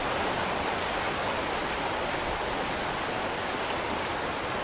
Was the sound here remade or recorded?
recorded